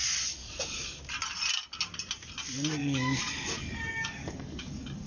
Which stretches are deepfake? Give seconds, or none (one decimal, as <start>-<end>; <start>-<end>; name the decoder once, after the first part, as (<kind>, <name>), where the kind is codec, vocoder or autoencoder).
0.0-1.0 (codec, DAC); 2.8-5.1